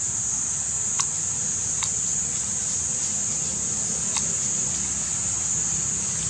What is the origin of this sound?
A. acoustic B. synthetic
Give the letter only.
A